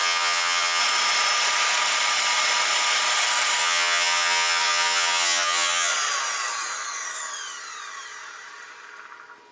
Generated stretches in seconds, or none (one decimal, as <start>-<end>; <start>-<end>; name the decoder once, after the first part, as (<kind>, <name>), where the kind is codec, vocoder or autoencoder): 0.0-0.8 (vocoder, HiFi-GAN); 3.6-5.9